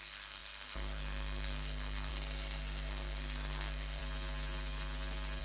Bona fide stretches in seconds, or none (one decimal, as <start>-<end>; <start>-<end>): 4.0-5.4